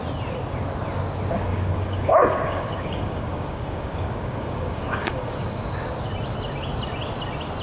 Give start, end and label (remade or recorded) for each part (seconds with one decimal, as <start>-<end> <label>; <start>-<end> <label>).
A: 0.0-1.5 recorded; 1.5-5.7 remade; 5.7-7.6 recorded